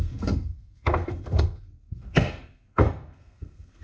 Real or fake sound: fake